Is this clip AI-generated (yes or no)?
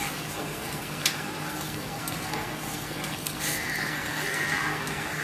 yes